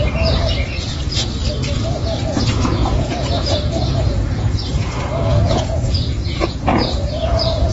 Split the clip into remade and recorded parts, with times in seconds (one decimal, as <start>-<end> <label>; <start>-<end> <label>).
0.0-1.4 remade; 1.4-2.3 recorded; 2.3-7.7 remade